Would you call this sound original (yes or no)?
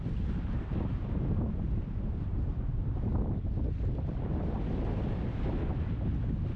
yes